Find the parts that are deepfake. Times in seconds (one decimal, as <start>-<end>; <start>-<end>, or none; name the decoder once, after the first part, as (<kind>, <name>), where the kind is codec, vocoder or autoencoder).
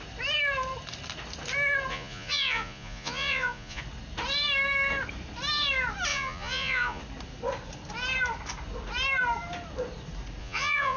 1.9-3.8 (vocoder, Vocos); 6.1-7.0; 10.4-11.0